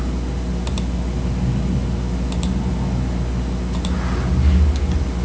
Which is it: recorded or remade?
recorded